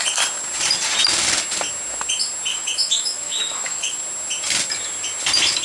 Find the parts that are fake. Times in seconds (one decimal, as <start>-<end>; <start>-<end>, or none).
2.5-4.0